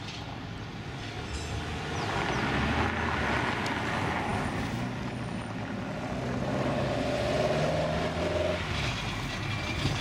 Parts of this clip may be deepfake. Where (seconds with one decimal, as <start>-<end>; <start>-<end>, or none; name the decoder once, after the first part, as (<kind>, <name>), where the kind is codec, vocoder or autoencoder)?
none